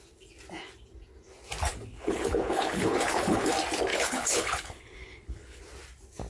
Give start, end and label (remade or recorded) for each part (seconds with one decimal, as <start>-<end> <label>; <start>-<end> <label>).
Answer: 0.0-1.7 recorded; 1.7-3.5 remade; 3.5-3.9 recorded; 3.9-5.6 remade; 5.6-6.3 recorded